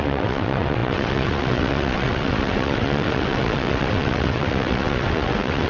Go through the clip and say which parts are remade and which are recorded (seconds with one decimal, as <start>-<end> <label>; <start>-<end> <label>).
0.0-5.7 remade